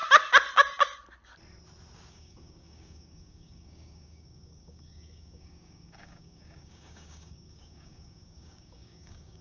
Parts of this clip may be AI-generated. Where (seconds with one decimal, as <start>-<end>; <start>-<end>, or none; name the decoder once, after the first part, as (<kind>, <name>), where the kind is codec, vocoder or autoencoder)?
2.1-9.4 (codec, DAC)